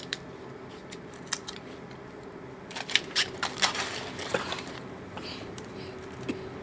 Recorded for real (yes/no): no